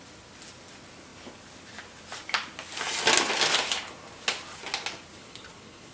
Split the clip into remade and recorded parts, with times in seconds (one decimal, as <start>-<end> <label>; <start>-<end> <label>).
0.0-5.2 recorded; 5.2-5.9 remade